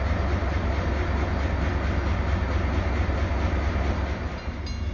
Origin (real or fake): real